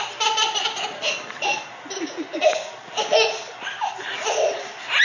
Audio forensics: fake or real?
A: real